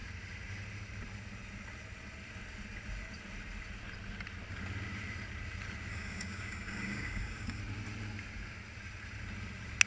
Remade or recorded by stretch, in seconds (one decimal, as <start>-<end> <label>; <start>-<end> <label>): 0.0-5.9 recorded; 5.9-7.6 remade; 7.6-9.9 recorded

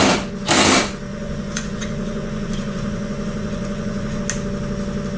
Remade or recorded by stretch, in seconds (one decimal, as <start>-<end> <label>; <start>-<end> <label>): 0.0-1.1 recorded; 1.1-4.2 remade; 4.2-5.2 recorded

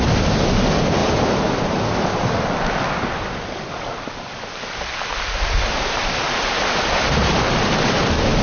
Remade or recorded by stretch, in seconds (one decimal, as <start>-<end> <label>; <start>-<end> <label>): 0.0-8.4 recorded

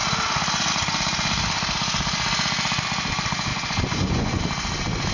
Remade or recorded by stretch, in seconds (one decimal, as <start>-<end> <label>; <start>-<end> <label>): 0.0-3.5 recorded; 3.5-4.4 remade; 4.4-5.1 recorded

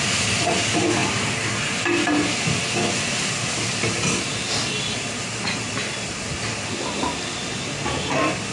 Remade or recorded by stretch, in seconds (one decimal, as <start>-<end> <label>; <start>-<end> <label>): 0.0-8.5 recorded

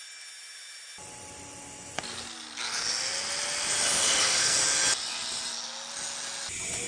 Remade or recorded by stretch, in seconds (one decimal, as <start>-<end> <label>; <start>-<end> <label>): 0.0-4.0 recorded; 4.0-4.6 remade; 4.6-6.9 recorded